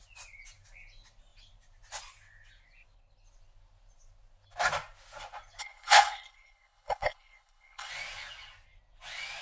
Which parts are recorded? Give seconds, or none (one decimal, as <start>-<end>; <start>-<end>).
0.0-5.6; 7.9-9.4